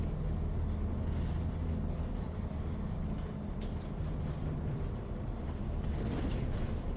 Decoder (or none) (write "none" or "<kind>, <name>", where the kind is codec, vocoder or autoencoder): none